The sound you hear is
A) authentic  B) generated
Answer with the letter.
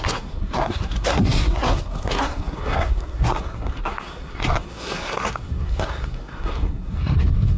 B